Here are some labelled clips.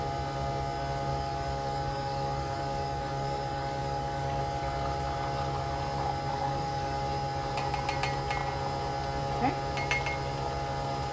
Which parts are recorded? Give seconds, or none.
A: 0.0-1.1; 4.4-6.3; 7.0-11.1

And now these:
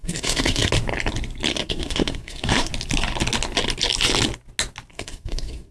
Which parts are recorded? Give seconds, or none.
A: 0.7-1.5; 2.7-4.9

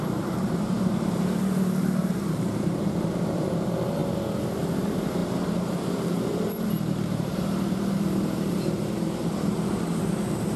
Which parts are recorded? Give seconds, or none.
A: 4.0-4.6

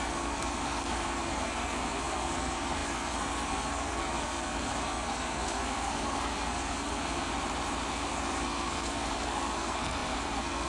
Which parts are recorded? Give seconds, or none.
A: 7.3-7.9

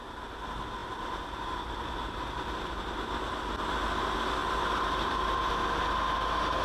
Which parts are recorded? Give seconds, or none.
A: 0.0-4.4; 5.5-6.6

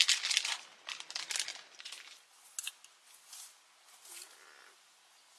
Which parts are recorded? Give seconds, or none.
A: 0.0-5.4

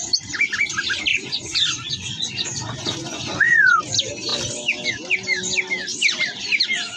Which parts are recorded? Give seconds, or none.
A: 0.0-1.1; 3.8-7.0

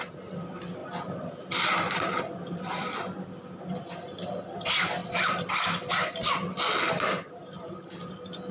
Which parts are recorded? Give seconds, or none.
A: 0.0-8.5